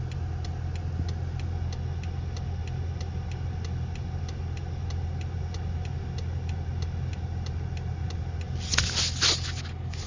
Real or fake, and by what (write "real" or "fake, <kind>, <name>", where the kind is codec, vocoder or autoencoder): real